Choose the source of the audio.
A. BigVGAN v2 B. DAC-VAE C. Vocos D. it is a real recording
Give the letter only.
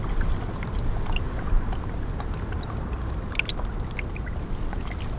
D